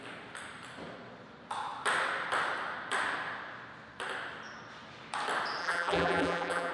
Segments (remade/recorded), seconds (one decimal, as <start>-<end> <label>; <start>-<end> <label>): 0.0-5.6 recorded; 5.6-6.7 remade